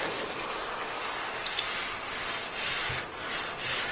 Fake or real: real